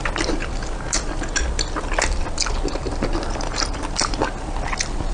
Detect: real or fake real